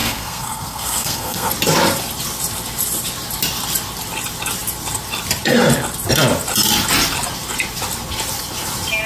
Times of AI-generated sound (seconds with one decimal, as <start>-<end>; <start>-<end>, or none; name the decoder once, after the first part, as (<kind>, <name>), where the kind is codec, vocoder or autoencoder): 0.0-1.5 (codec, SNAC)

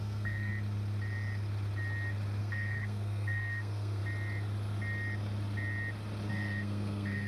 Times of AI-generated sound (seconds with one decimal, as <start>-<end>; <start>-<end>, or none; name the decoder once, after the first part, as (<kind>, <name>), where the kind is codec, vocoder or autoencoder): 0.0-0.5 (codec, SNAC); 2.4-4.0; 6.3-7.3

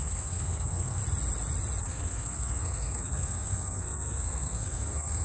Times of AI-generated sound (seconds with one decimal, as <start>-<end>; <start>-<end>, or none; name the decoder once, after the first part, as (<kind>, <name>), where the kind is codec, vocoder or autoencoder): 0.0-1.0 (codec, SNAC); 1.8-5.2

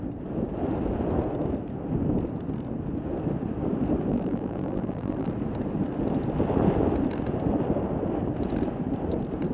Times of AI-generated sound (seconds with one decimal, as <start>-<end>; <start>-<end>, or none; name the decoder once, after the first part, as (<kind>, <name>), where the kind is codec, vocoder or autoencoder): 4.1-5.3 (vocoder, BigVGAN v2)

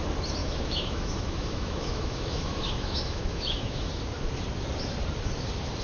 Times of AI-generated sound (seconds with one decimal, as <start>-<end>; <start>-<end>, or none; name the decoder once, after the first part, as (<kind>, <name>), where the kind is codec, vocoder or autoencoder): 0.4-3.9 (autoencoder, DAC-VAE)

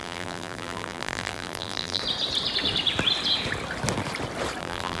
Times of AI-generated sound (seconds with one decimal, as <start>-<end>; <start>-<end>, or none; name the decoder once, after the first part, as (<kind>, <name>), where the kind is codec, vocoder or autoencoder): 0.0-2.0 (vocoder, BigVGAN v2); 4.6-5.0

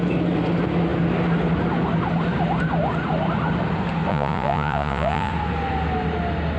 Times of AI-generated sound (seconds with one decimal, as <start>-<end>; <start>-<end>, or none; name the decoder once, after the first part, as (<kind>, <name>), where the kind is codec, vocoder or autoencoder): 4.1-5.3 (vocoder, Vocos)